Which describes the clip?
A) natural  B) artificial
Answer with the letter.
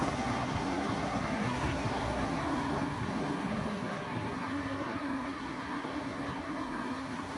B